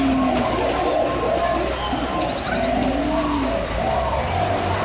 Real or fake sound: real